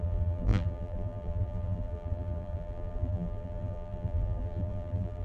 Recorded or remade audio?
remade